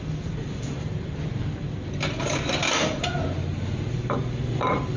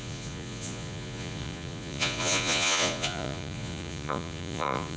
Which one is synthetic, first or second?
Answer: second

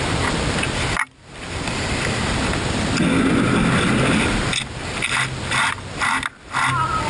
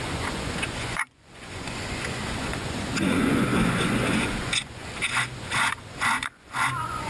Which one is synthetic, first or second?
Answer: second